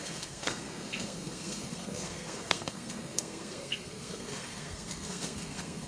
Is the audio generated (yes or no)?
yes